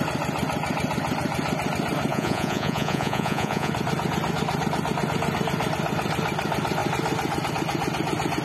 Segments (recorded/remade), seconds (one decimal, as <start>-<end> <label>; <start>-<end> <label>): 0.0-2.1 recorded; 2.1-3.7 remade; 3.7-8.4 recorded